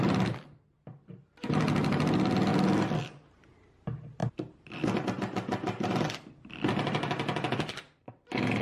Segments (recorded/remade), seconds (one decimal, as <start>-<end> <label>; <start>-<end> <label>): 0.0-8.6 recorded